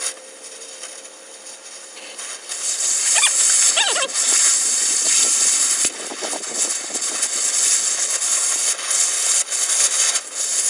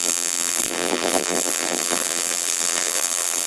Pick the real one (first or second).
first